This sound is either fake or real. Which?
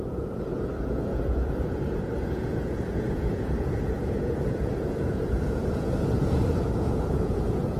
fake